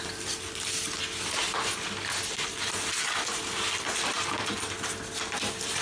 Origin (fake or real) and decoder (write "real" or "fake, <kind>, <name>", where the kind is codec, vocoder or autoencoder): real